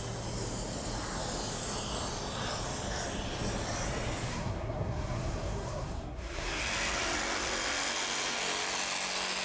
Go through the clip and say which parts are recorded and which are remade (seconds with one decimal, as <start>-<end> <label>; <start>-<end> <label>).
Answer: 0.0-4.3 recorded; 4.3-6.6 remade; 6.6-9.4 recorded